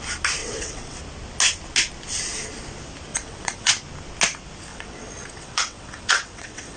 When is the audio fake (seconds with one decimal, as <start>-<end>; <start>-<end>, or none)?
0.4-1.0; 3.1-3.7; 4.7-6.8